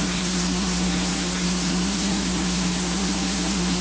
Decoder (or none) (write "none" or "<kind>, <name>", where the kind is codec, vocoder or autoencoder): codec, SNAC